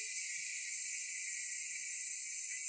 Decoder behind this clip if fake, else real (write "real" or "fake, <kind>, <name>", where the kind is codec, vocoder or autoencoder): real